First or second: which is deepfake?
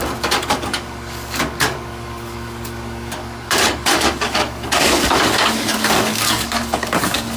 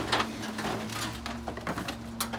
first